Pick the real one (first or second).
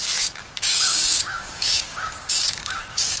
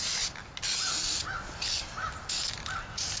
second